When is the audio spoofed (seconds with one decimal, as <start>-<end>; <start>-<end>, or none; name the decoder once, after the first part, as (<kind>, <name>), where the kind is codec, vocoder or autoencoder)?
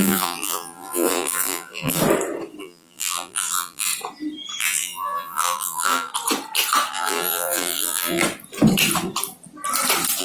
0.0-2.0 (vocoder, BigVGAN v2); 2.6-3.9; 4.6-6.1; 6.9-8.2